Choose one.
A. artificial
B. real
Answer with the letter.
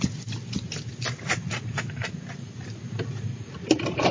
B